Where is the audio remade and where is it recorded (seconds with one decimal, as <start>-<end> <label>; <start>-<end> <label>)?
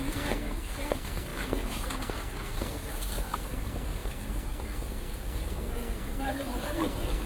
0.0-7.3 remade